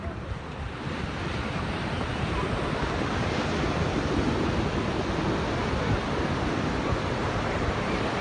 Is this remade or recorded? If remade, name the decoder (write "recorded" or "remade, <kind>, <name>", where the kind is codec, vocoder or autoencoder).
recorded